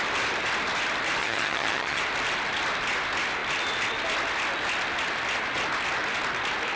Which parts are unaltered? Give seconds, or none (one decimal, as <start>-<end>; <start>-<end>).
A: 0.0-1.2; 2.0-6.8

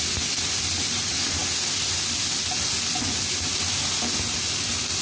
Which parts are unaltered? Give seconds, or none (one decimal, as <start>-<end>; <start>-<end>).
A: 0.0-5.0

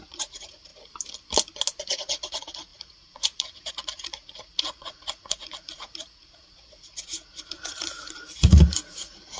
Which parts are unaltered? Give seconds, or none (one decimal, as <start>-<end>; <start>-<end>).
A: 0.7-2.0

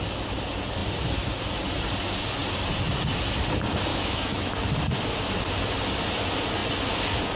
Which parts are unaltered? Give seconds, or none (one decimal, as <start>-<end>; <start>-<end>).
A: 0.0-3.9; 4.5-7.4

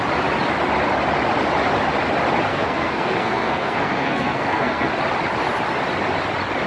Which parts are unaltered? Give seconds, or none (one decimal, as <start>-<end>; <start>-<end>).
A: 0.0-2.5; 4.9-6.7

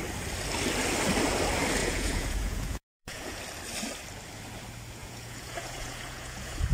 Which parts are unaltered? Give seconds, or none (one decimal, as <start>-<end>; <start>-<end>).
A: 0.0-1.8; 3.4-5.0

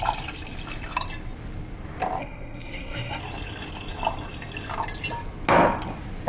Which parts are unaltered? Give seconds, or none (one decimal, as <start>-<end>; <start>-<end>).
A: 0.0-2.2; 3.2-6.3

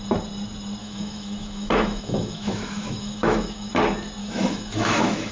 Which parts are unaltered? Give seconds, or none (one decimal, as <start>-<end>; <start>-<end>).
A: 0.0-0.8; 3.7-4.2